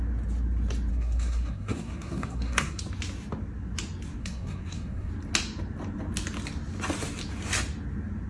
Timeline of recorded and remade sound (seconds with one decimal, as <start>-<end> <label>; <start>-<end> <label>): 0.0-0.9 recorded; 0.9-2.8 remade; 2.8-4.2 recorded; 4.2-5.1 remade; 5.1-8.3 recorded